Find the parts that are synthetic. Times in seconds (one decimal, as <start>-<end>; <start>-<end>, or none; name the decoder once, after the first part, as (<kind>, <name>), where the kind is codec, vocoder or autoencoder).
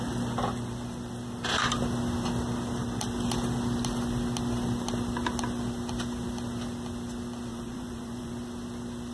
7.5-8.3 (vocoder, Vocos)